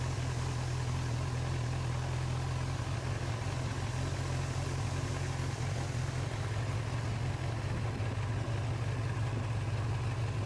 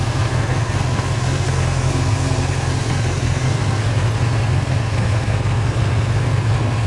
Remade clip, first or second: second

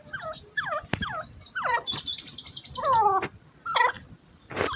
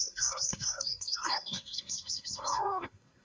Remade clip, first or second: second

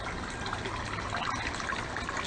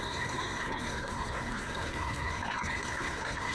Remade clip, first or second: second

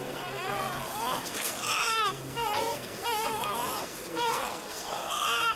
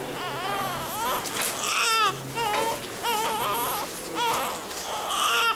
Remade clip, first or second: first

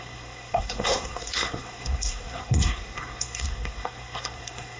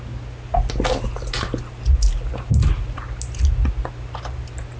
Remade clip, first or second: first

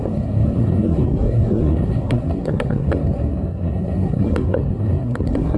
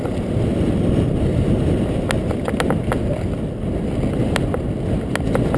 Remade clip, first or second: first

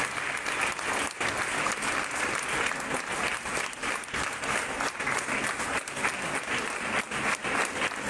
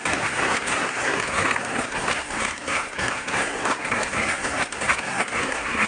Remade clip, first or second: second